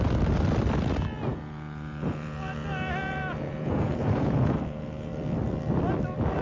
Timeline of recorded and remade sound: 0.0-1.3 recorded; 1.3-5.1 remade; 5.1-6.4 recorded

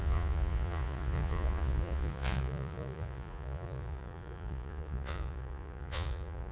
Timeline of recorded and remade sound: 0.0-6.5 remade

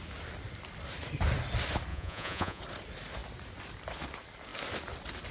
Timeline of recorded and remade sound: 0.0-1.9 recorded; 1.9-2.6 remade; 2.6-5.3 recorded

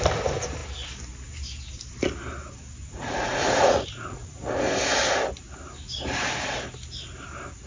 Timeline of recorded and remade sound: 0.0-2.8 recorded; 2.8-4.6 remade; 4.6-7.7 recorded

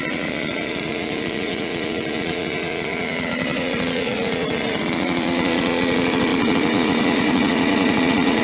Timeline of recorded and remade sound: 0.0-8.4 remade